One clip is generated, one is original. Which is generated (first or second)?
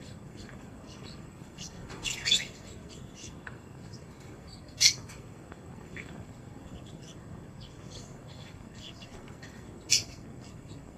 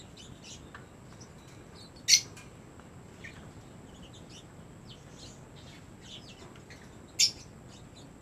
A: first